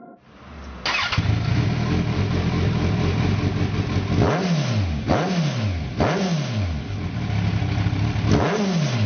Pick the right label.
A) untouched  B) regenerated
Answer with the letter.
A